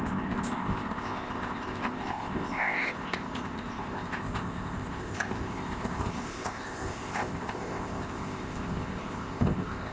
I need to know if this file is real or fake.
fake